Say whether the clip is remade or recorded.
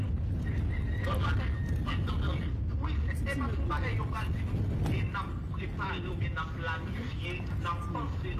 recorded